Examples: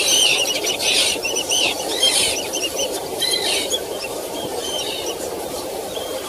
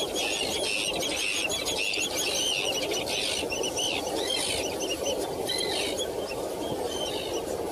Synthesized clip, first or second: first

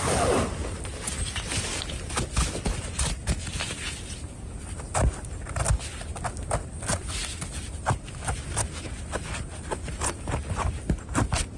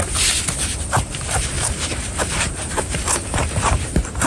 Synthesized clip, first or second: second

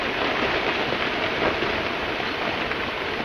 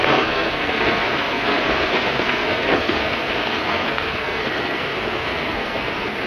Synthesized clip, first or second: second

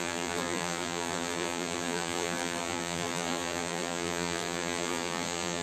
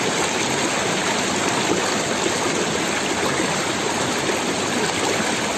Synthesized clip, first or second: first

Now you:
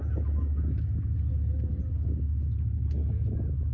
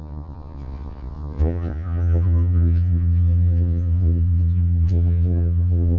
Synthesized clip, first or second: second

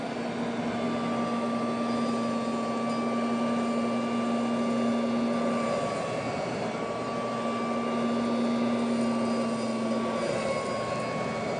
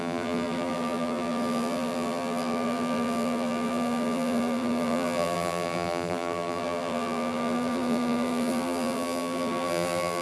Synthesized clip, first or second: second